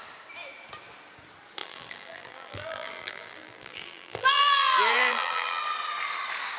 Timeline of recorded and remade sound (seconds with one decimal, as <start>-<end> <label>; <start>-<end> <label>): 0.0-1.6 recorded; 1.6-5.6 remade; 5.6-6.6 recorded